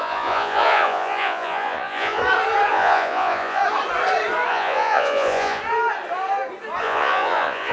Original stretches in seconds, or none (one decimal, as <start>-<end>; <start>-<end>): 2.2-2.7; 3.6-4.5; 5.6-6.8